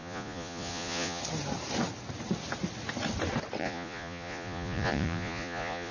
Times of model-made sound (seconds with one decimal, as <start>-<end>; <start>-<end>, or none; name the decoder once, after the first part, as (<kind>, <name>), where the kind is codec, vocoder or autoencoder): 0.0-1.2 (vocoder, Vocos); 3.6-5.9